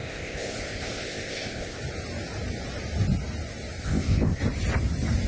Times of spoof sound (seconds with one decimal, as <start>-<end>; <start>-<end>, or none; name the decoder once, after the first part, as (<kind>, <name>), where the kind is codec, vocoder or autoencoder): 0.0-1.8 (codec, ZipCodec); 3.8-4.4